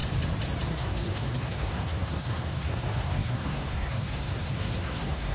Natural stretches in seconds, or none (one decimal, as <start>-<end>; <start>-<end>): 0.0-0.7